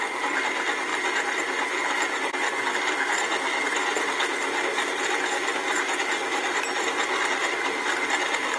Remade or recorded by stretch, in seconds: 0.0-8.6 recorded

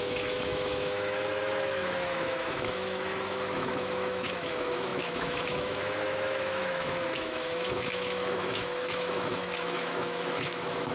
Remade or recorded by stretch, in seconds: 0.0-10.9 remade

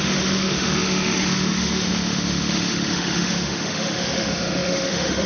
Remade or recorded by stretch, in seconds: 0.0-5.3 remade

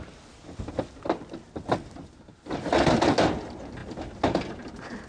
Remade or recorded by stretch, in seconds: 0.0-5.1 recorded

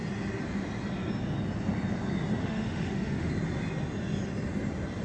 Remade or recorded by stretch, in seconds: 0.0-2.4 recorded; 2.4-3.3 remade; 3.3-5.0 recorded